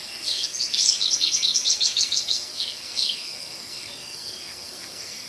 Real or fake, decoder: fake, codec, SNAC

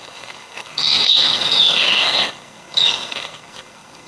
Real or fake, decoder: fake, codec, SNAC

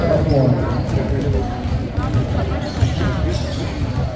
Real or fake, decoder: real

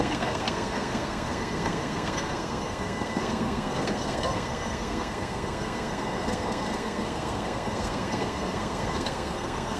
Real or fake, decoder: fake, codec, SNAC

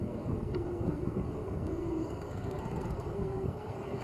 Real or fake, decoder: fake, codec, SNAC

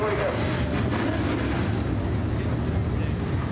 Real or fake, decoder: real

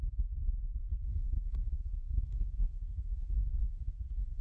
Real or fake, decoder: fake, codec, SNAC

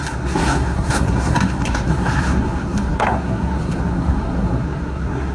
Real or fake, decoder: fake, codec, SNAC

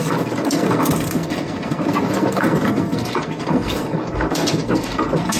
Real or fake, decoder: fake, codec, SNAC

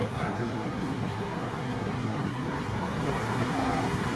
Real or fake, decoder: fake, codec, SNAC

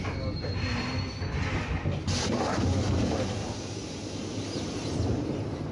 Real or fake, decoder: real